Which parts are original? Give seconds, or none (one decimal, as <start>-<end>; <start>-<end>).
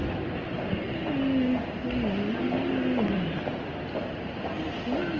0.0-5.2